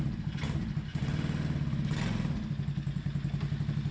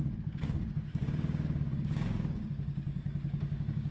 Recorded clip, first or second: first